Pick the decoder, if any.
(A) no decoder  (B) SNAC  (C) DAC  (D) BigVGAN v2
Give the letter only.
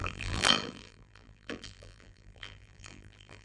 D